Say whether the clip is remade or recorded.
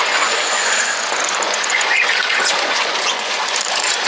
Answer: remade